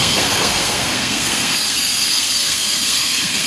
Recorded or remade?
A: remade